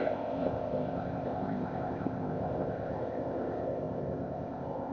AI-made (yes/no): yes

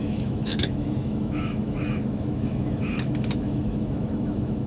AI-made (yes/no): yes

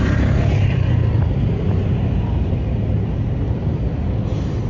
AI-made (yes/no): no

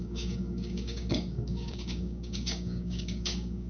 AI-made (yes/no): yes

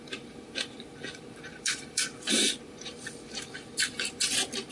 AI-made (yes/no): yes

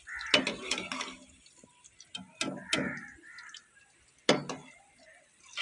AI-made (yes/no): no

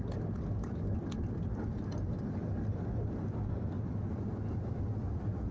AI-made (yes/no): no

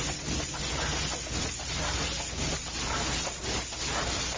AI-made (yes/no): no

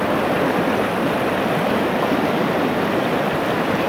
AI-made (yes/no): no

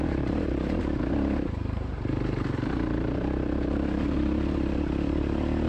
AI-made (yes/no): yes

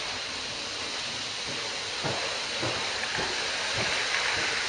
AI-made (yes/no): yes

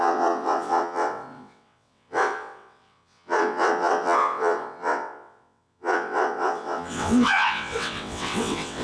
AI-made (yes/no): yes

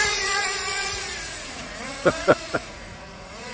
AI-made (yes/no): yes